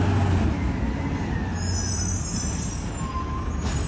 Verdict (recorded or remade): recorded